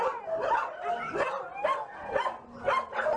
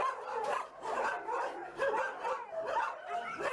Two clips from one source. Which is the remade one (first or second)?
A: second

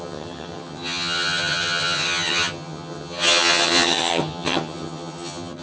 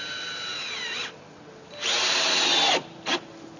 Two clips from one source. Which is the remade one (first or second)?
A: first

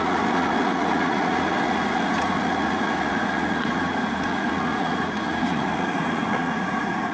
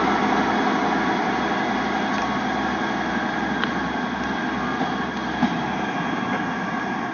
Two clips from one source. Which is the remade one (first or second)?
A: first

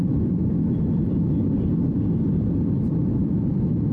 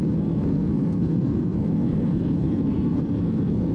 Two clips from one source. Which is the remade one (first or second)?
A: second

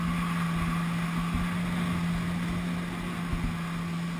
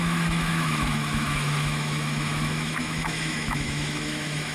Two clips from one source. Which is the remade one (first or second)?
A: second